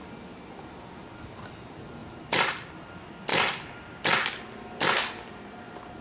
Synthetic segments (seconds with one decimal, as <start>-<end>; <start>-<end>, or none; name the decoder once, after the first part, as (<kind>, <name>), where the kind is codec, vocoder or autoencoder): 2.0-2.7 (vocoder, BigVGAN v2)